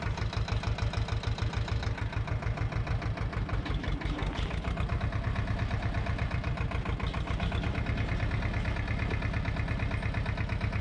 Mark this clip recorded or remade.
recorded